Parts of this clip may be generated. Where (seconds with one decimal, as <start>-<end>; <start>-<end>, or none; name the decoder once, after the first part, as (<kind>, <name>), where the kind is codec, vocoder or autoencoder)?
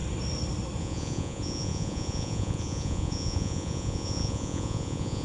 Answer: 0.8-5.2 (vocoder, Vocos)